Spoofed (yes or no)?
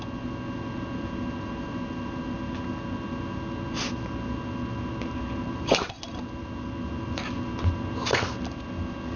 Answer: no